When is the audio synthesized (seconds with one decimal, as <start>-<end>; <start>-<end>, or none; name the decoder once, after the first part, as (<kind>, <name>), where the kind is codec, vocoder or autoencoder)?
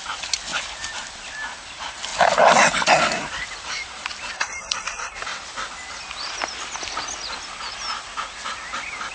none